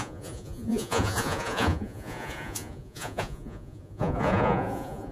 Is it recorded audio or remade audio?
remade